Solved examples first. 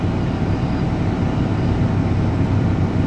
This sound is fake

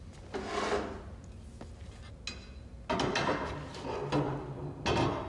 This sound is real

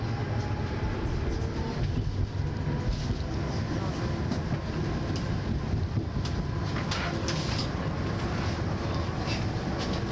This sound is real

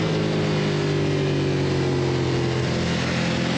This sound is real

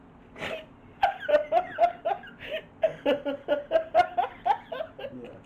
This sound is real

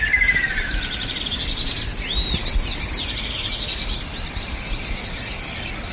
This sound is real